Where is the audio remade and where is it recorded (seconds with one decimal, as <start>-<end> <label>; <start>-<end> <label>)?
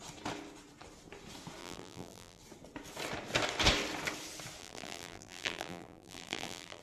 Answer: 0.0-1.6 recorded; 1.6-2.4 remade; 2.4-4.6 recorded; 4.6-6.8 remade